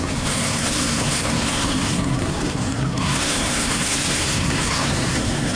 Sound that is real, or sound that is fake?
fake